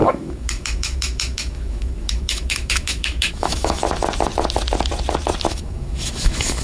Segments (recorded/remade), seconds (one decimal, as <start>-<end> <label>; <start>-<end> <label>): 0.0-3.8 remade; 3.8-5.5 recorded; 5.5-6.6 remade